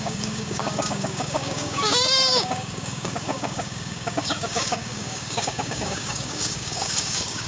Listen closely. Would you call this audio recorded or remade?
remade